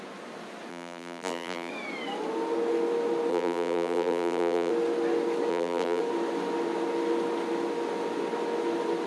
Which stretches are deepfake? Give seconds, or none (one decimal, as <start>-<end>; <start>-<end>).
0.7-1.7; 3.3-4.7; 5.5-6.0

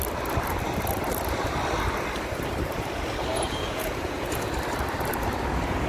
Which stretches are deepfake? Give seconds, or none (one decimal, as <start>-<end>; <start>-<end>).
3.3-4.5

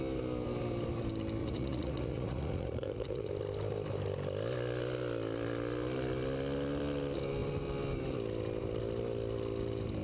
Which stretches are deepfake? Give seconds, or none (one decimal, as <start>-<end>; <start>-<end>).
1.4-3.3

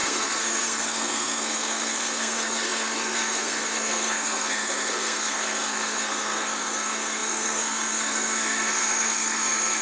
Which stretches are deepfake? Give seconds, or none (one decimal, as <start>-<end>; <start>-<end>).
0.0-9.8

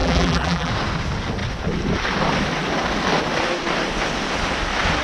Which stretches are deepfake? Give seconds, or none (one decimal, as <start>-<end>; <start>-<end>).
0.0-0.7

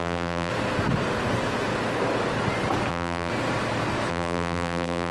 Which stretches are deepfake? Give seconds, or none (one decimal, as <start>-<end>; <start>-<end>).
0.0-0.5; 2.9-3.3; 4.1-5.1

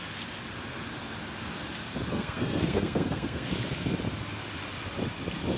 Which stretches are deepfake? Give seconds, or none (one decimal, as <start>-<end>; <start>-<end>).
2.1-3.5

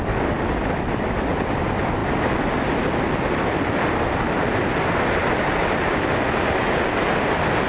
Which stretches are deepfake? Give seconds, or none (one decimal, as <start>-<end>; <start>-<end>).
none